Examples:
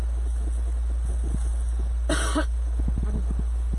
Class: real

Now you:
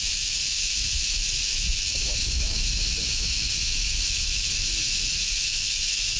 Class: fake